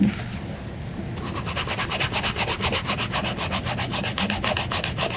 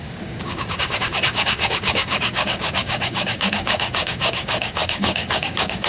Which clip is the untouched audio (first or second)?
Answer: first